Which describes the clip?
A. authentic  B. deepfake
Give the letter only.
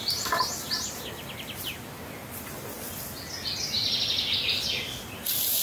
A